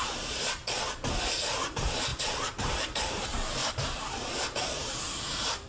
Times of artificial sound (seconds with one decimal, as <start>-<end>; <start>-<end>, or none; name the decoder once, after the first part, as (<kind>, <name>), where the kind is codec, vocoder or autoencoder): 0.0-0.6 (vocoder, BigVGAN v2); 1.4-2.1; 2.8-5.7